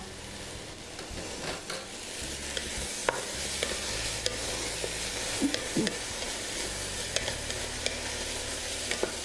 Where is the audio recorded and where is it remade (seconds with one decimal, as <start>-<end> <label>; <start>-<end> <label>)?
0.0-9.2 recorded